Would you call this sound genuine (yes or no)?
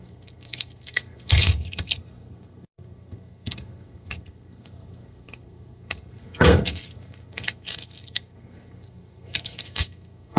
no